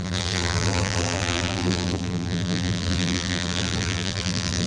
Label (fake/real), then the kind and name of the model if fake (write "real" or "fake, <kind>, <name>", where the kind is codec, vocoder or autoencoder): fake, vocoder, BigVGAN v2